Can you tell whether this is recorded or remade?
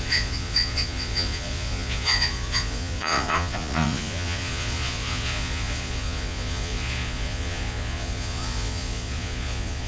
remade